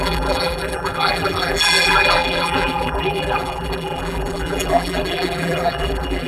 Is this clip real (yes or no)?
no